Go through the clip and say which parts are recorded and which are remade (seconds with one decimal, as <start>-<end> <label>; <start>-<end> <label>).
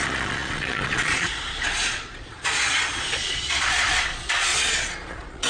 0.0-5.5 remade